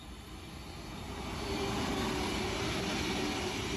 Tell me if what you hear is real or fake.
real